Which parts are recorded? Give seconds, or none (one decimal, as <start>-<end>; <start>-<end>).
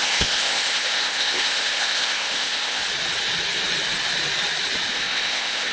2.8-4.9